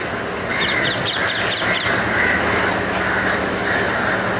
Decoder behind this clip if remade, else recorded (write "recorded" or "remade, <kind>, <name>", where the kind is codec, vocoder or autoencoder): recorded